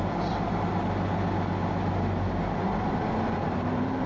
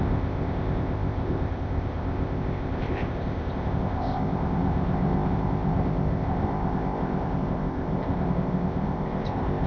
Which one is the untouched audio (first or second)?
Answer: first